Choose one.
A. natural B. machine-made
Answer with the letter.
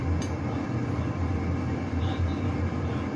A